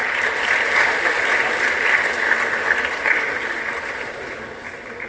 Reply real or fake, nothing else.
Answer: real